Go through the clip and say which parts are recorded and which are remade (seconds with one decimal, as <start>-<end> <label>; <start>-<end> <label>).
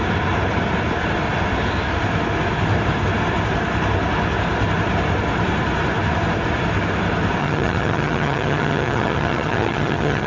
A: 0.0-7.4 recorded; 7.4-10.3 remade